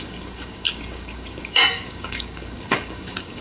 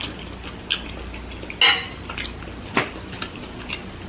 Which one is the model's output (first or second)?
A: first